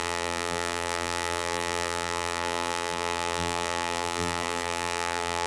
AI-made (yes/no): yes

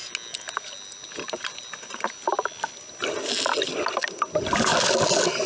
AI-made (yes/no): no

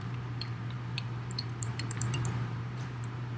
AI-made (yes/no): yes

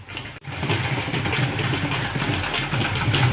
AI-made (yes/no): no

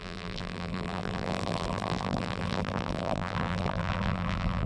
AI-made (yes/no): yes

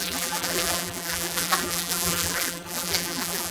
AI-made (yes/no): yes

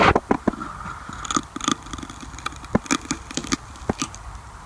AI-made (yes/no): yes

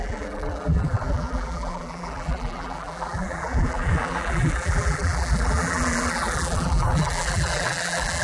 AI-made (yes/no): yes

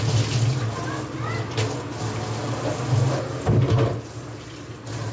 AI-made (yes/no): no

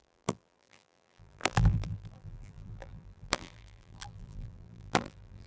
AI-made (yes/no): yes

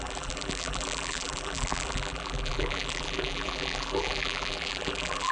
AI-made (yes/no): yes